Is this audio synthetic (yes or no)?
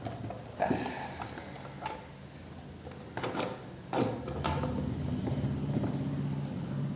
no